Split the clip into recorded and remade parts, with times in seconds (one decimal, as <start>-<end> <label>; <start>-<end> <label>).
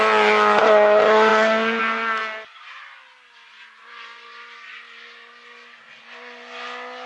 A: 0.0-7.1 recorded